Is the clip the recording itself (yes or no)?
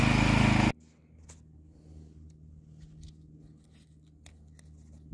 yes